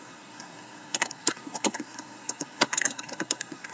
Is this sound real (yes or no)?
no